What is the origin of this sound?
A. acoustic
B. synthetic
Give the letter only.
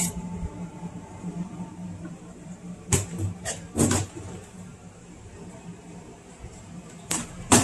B